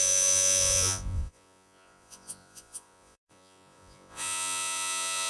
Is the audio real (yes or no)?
no